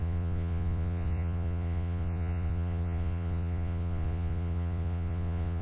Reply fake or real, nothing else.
fake